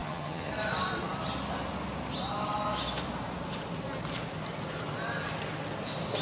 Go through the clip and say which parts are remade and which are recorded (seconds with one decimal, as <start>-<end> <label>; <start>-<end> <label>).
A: 0.0-0.5 remade; 0.5-6.2 recorded